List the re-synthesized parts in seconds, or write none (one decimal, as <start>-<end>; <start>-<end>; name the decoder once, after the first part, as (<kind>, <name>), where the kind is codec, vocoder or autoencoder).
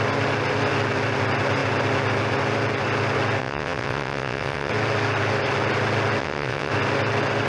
3.4-4.7 (vocoder, WaveNeXt); 6.2-6.7